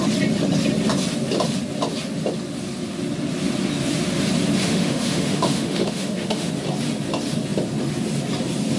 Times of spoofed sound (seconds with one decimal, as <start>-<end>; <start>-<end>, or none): 4.6-6.5